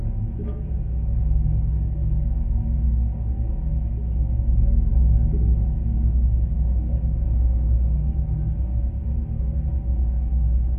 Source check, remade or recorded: recorded